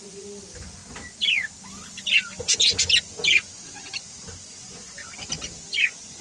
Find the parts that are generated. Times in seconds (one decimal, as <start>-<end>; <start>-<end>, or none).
0.0-0.8; 3.0-5.0; 5.8-6.2